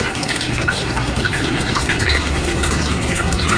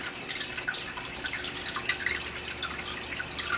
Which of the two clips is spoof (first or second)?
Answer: first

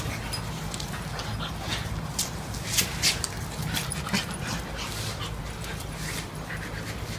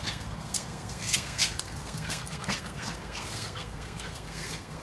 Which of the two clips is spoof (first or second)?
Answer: second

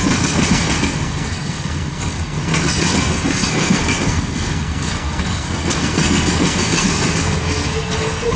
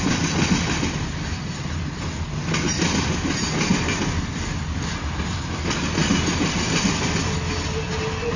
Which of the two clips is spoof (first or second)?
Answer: first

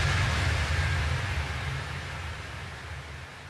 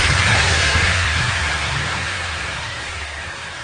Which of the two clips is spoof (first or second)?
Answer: second